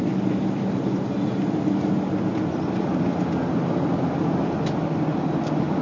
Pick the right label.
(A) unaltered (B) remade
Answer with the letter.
A